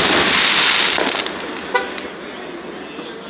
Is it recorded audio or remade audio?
recorded